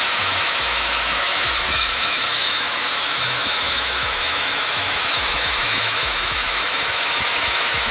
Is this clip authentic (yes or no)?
no